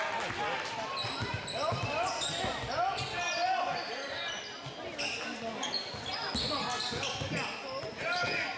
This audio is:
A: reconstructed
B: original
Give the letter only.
B